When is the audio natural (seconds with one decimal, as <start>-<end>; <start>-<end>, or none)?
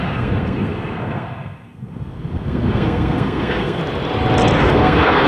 3.8-4.6